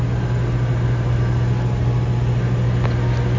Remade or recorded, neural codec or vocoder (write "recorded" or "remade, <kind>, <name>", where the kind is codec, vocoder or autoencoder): recorded